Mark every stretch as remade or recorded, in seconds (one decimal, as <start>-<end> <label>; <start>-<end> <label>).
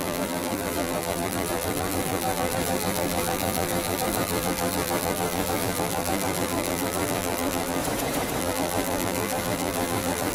0.0-7.8 remade; 7.8-8.4 recorded; 8.4-10.3 remade